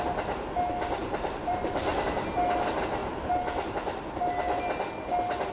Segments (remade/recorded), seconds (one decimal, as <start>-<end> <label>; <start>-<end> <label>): 0.0-1.0 recorded; 1.0-2.2 remade; 2.2-3.0 recorded; 3.0-3.7 remade; 3.7-5.5 recorded